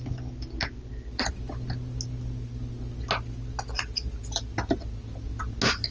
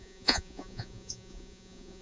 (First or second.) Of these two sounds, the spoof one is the second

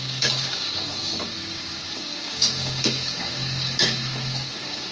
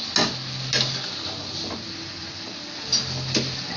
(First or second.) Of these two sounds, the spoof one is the first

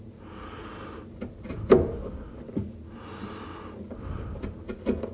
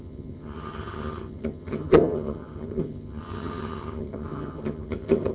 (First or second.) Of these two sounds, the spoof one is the second